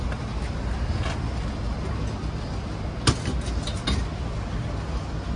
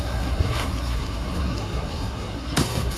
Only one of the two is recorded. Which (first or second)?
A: first